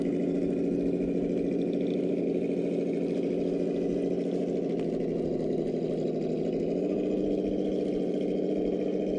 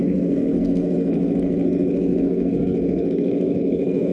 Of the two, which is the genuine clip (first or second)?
first